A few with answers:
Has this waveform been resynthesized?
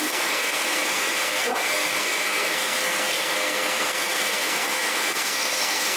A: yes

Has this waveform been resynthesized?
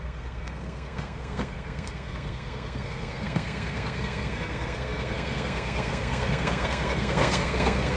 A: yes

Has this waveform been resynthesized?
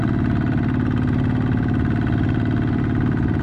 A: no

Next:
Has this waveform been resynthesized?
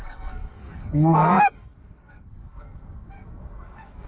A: yes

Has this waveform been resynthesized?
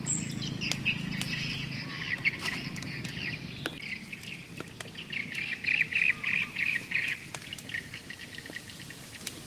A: no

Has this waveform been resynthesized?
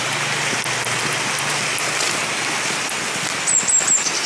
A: no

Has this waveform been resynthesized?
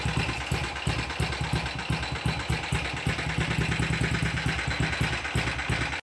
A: no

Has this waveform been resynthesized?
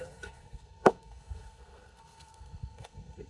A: yes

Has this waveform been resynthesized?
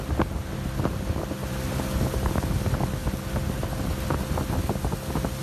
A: no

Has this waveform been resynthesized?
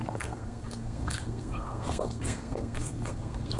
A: yes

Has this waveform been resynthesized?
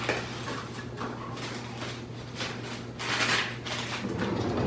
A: no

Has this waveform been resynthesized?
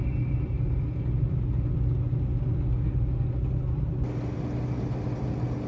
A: no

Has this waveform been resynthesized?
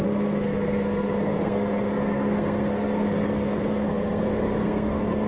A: yes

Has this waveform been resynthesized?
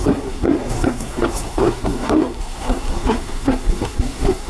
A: yes